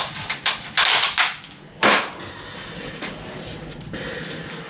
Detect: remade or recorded recorded